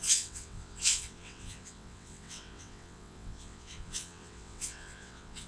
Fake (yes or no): yes